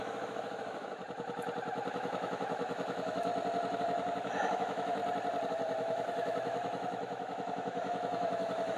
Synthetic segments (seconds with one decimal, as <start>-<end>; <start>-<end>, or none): 0.0-1.0; 1.9-3.3; 3.8-5.0; 5.5-8.8